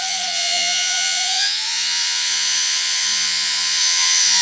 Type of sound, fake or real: fake